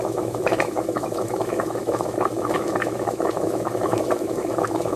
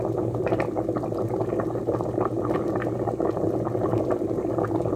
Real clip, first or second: second